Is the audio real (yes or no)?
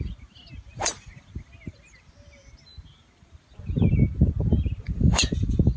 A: no